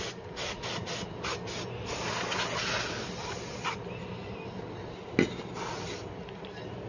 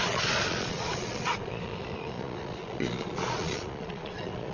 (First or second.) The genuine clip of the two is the first